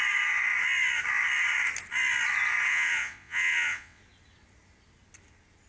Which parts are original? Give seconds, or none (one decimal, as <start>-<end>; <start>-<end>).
0.0-2.7; 4.0-5.7

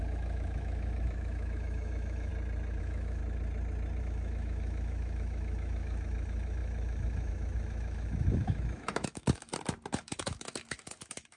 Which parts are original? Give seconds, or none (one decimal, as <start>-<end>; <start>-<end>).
2.3-2.8; 3.2-4.0; 9.5-10.0

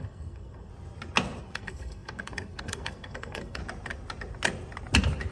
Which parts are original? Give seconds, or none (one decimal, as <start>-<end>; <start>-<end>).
0.7-1.4; 3.6-5.3

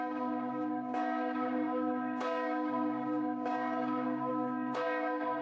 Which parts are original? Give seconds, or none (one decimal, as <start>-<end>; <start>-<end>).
none